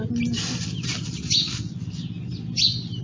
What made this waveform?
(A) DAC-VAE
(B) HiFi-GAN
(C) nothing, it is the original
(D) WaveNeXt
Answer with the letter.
C